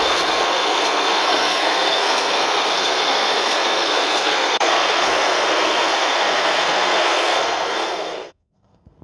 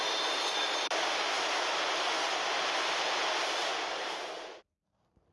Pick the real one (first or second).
second